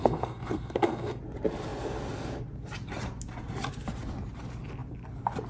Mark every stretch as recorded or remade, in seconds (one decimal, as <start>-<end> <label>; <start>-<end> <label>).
0.0-1.2 remade; 1.2-5.5 recorded